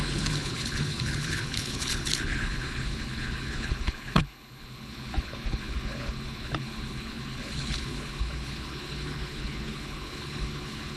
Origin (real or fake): fake